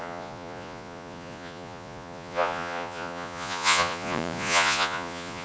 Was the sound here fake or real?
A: fake